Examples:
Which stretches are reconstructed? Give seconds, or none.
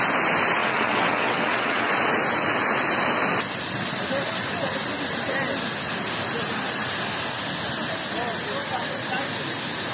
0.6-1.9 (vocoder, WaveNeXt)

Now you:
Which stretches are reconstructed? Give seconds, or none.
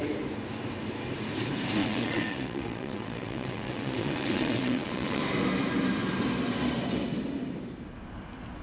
1.8-5.2 (vocoder, WaveNeXt)